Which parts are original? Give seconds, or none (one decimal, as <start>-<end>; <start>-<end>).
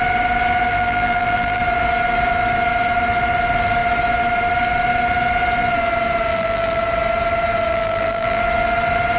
0.0-0.7; 1.6-6.3; 6.8-7.7; 8.4-9.2